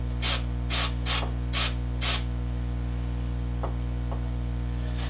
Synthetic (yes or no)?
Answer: no